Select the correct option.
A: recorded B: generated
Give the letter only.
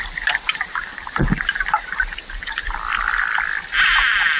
B